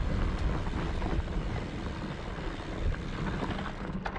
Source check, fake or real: real